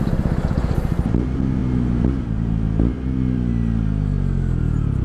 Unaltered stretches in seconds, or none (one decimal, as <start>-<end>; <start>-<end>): 0.0-1.6; 4.6-5.0